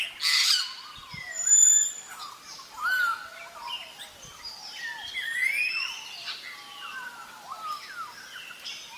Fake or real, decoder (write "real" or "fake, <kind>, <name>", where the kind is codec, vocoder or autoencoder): fake, vocoder, BigVGAN v2